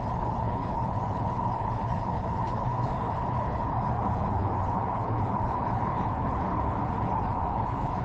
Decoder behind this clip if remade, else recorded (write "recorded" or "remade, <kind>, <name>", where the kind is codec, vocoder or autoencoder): remade, codec, HILCodec